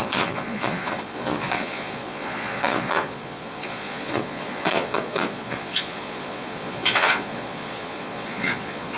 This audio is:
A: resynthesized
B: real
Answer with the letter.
A